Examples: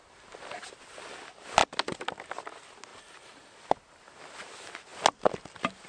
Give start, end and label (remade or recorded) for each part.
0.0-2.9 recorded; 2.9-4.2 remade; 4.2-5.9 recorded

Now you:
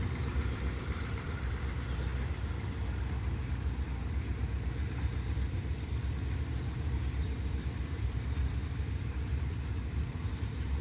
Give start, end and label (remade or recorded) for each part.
0.0-2.1 remade; 2.1-5.0 recorded; 5.0-10.8 remade

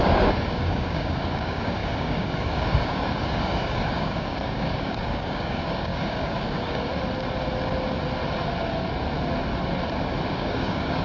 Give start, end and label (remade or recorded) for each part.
0.0-6.9 remade; 6.9-10.3 recorded; 10.3-11.0 remade